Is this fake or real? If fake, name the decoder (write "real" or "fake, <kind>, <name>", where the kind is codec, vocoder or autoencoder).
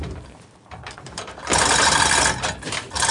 fake, vocoder, BigVGAN v2